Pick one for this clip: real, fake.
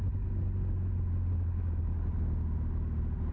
real